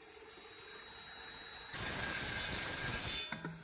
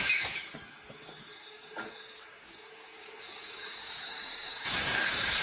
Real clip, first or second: first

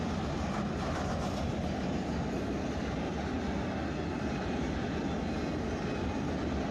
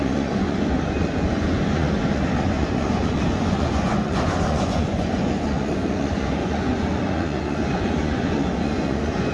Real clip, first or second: first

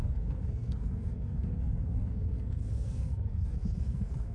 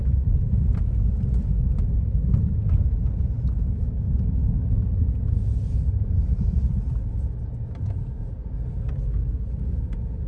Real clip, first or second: second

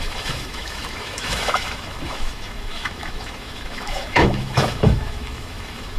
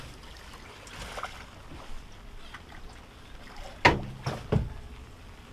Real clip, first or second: second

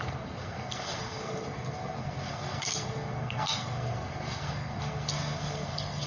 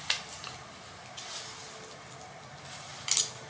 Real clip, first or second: second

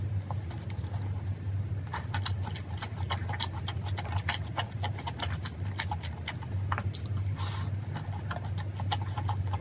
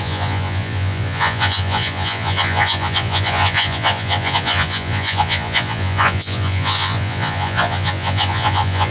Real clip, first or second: first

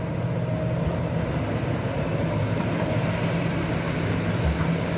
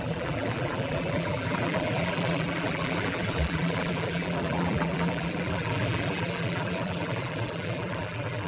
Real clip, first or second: first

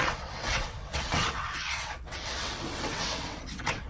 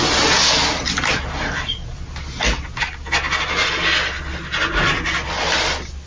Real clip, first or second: second